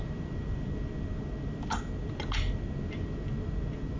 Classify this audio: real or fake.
real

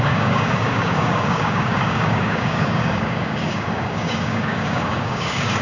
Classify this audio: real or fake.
fake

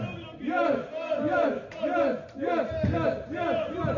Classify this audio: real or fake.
real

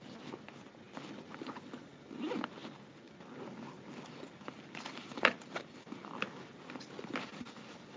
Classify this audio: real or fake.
real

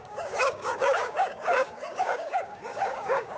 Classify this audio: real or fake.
fake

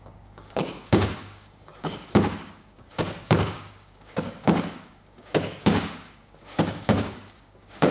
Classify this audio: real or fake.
fake